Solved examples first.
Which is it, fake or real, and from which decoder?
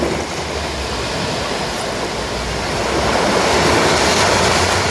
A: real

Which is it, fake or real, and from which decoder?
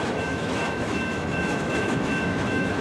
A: fake, autoencoder, DAC-VAE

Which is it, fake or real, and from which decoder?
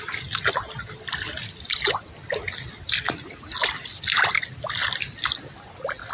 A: real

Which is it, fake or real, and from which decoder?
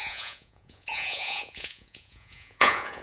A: fake, vocoder, Vocos